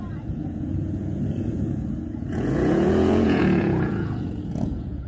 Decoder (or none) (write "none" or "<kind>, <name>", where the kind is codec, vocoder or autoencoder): vocoder, Vocos